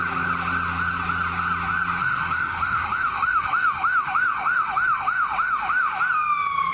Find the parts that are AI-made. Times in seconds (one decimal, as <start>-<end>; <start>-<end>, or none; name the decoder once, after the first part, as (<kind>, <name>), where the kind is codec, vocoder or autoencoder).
2.0-6.0 (autoencoder, DAC-VAE)